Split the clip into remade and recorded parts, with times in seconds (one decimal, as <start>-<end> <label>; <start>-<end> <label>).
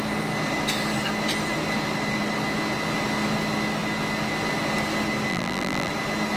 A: 0.0-5.3 recorded; 5.3-5.9 remade; 5.9-6.4 recorded